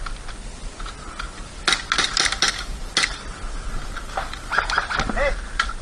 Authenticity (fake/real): real